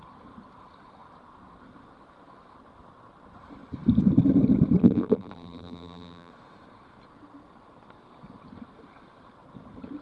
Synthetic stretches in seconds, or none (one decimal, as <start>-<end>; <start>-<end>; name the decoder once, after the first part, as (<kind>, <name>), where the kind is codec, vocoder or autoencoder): 4.8-6.3 (vocoder, BigVGAN v2)